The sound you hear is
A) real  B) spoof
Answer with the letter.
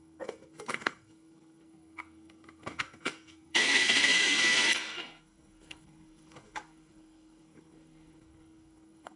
B